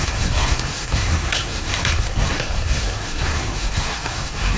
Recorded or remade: remade